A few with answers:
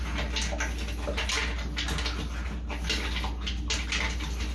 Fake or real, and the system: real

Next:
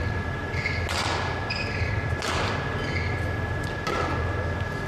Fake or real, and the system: real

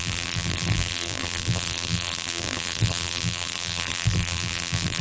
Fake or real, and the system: fake, vocoder, BigVGAN v2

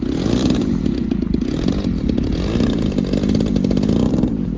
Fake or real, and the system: real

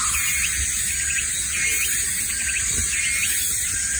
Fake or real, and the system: real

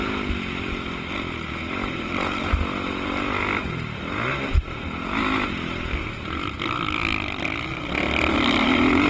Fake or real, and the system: fake, vocoder, BigVGAN v2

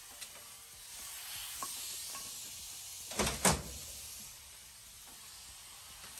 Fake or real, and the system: real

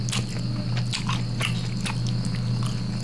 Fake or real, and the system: real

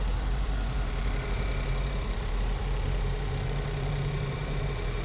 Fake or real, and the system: fake, vocoder, BigVGAN v2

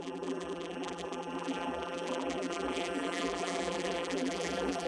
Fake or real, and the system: fake, vocoder, BigVGAN v2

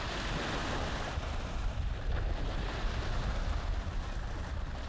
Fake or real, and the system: real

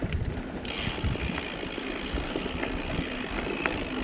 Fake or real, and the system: real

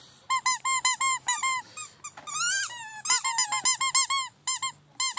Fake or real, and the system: real